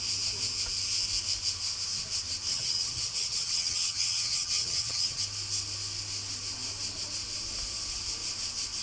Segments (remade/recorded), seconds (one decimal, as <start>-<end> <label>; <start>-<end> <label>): 0.0-2.5 recorded; 2.5-5.2 remade; 5.2-8.8 recorded